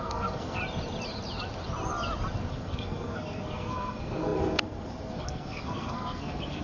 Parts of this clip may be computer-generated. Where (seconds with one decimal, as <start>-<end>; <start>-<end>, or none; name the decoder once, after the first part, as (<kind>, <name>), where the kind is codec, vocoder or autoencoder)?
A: 0.0-0.6 (codec, SNAC); 2.5-6.6